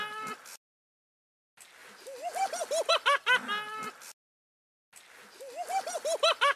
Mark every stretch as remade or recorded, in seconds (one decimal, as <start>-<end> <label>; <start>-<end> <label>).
0.0-1.8 recorded; 1.8-2.9 remade; 2.9-6.6 recorded